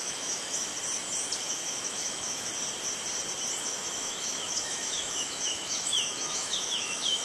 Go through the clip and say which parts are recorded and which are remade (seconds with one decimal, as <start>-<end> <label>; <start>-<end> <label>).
0.0-0.7 remade; 0.7-1.4 recorded; 1.4-2.5 remade; 2.5-3.6 recorded; 3.6-7.2 remade